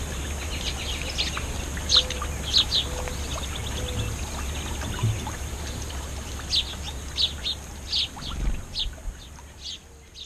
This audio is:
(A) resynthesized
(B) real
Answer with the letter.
B